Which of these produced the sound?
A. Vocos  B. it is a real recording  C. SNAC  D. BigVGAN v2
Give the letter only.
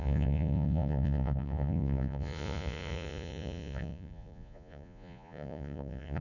A